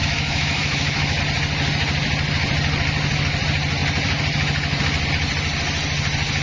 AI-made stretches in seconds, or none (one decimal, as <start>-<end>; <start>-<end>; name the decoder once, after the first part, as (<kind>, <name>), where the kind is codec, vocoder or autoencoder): 0.0-1.2 (autoencoder, DAC-VAE)